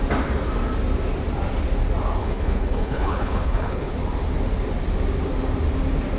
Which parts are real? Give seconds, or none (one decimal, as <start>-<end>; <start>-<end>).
0.0-2.2; 3.9-6.2